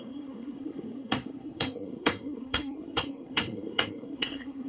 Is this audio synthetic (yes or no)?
yes